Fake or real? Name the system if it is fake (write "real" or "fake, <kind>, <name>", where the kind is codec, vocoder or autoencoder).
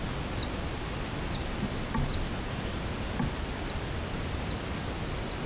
real